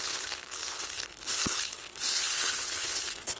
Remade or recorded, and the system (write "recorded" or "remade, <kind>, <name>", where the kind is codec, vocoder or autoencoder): remade, codec, HILCodec